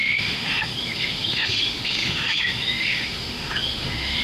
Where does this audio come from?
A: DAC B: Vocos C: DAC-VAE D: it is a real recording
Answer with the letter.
C